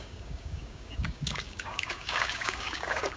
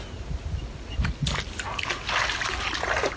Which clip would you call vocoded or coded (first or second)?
first